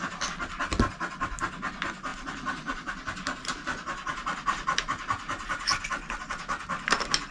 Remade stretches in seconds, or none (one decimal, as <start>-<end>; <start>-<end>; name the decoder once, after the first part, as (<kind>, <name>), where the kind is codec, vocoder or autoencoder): none